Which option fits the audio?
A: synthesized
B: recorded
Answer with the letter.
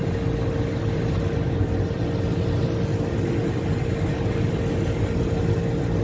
B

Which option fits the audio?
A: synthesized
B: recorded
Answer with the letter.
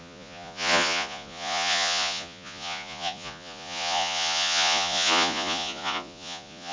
A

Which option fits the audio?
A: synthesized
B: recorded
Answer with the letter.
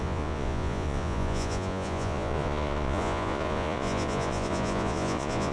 A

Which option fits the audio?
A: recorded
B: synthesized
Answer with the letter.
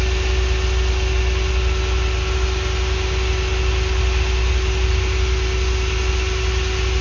A